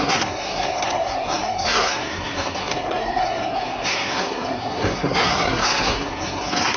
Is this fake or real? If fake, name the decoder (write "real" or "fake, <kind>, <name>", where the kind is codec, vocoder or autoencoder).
fake, codec, SNAC